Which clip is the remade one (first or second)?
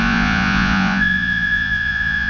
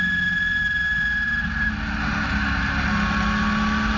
first